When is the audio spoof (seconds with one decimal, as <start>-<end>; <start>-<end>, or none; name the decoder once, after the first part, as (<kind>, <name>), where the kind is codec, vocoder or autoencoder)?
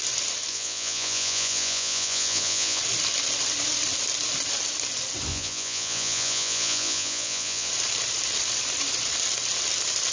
0.5-2.8 (vocoder, Vocos); 5.3-7.7